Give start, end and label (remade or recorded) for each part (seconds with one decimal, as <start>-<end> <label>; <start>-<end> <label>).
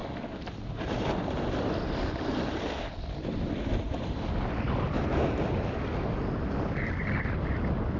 0.0-8.0 recorded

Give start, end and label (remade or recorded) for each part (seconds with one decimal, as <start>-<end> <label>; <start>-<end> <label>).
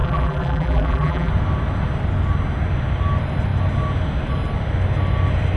0.0-1.3 remade; 1.3-5.6 recorded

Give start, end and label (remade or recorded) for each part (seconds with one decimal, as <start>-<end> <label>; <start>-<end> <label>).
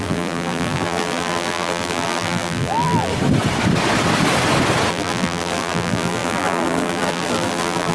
0.0-3.1 remade; 3.1-4.9 recorded; 4.9-7.9 remade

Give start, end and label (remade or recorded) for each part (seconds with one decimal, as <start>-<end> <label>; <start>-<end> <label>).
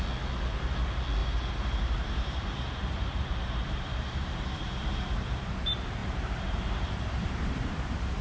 0.0-1.2 recorded; 1.2-5.5 remade; 5.5-6.0 recorded; 6.0-8.2 remade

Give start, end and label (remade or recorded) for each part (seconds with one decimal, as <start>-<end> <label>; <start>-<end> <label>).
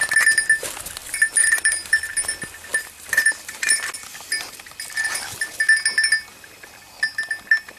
0.0-1.0 recorded; 1.0-2.0 remade; 2.0-2.7 recorded; 2.7-3.9 remade; 3.9-7.8 recorded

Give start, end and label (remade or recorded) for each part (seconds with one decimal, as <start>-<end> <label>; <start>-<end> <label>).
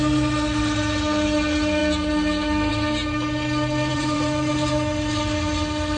0.0-3.9 recorded; 3.9-4.7 remade; 4.7-6.0 recorded